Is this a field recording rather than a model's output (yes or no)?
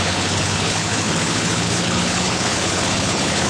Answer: no